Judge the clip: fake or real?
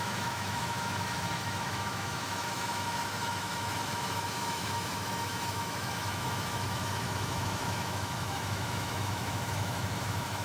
fake